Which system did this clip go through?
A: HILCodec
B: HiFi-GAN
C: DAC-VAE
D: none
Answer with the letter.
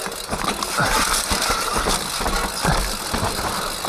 D